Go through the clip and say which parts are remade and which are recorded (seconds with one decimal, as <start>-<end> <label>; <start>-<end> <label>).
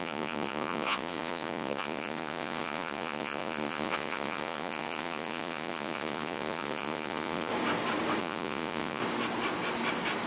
0.0-7.5 remade; 7.5-8.2 recorded; 8.2-9.0 remade; 9.0-10.3 recorded